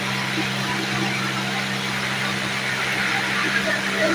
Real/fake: real